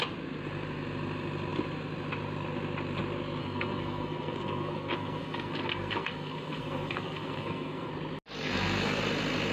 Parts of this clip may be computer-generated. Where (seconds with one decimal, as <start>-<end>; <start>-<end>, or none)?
3.4-7.9; 8.4-9.0